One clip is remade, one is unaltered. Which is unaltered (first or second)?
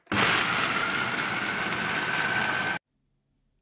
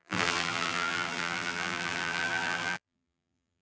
first